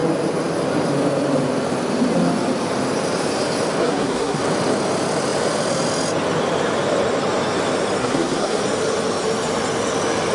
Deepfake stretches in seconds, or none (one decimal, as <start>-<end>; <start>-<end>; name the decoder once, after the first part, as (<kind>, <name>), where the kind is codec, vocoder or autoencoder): 3.8-4.4 (codec, SNAC); 8.0-8.6